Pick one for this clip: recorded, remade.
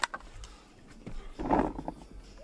recorded